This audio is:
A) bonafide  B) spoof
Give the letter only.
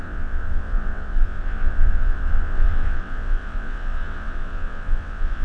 B